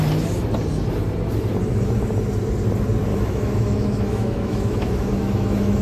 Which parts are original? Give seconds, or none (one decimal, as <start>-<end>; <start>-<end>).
0.0-3.1